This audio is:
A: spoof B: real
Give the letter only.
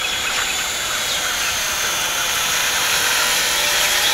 A